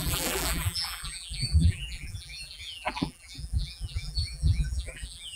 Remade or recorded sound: remade